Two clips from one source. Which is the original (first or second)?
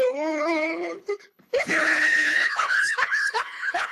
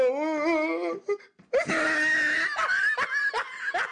second